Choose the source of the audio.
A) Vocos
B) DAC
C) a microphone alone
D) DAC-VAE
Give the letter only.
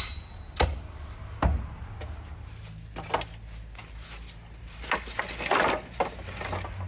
C